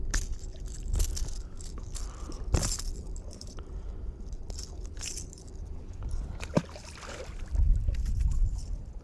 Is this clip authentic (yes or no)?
no